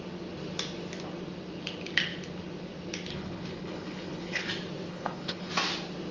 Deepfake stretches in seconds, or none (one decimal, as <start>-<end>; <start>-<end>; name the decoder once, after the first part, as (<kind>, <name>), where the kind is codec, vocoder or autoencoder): 3.1-4.5 (codec, HILCodec); 4.9-5.5